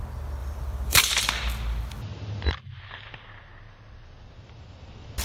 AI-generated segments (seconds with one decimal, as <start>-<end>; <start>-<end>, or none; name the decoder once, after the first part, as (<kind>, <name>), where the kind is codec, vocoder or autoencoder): 0.4-1.3 (vocoder, BigVGAN v2)